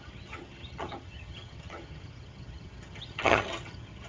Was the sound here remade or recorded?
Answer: remade